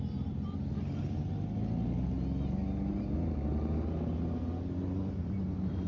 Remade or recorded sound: recorded